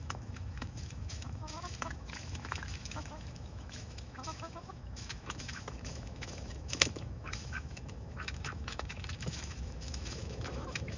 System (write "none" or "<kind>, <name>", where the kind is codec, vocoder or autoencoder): autoencoder, DAC-VAE